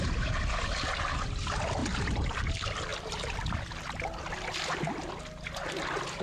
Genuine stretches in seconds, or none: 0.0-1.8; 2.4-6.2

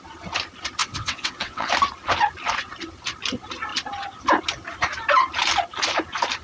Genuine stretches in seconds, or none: 0.0-0.8; 1.7-6.4

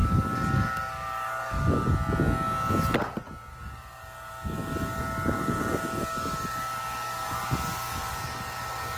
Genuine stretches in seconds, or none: 1.9-3.5

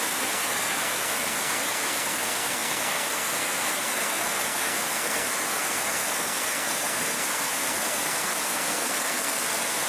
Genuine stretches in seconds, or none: none